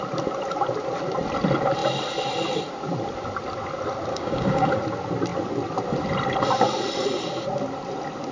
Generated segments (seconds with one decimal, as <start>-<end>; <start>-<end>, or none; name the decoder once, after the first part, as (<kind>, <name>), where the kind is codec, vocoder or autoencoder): 4.1-4.7 (codec, DAC)